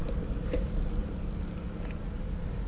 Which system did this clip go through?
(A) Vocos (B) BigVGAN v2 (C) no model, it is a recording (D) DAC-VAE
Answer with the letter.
C